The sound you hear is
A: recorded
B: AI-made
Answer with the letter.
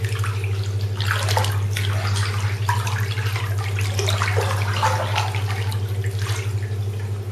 A